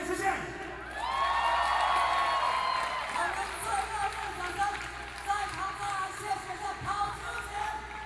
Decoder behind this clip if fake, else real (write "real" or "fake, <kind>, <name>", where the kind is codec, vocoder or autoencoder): real